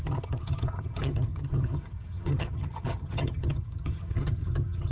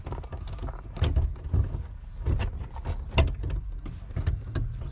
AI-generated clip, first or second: first